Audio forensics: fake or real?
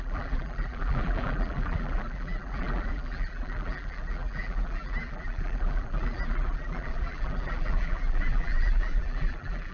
fake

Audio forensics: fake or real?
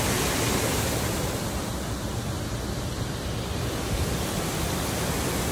real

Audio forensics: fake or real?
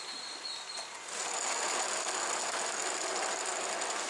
real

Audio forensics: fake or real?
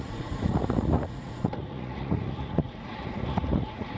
fake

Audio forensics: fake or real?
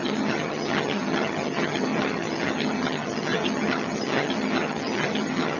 fake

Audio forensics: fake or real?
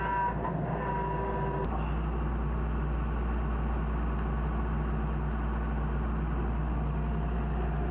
real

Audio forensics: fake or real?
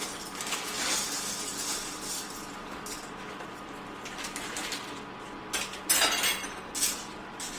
real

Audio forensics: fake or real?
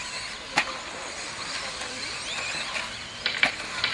fake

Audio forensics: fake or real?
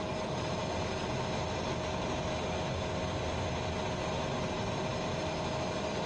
real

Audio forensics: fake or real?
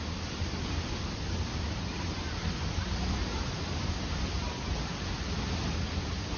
real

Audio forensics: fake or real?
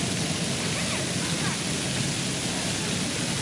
real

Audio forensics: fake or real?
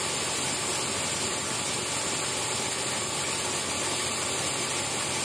real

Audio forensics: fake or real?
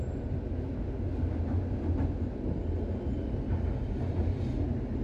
real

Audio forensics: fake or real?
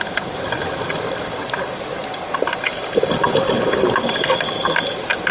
real